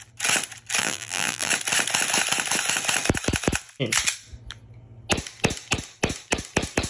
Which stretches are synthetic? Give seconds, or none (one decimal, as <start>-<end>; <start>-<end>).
0.8-1.5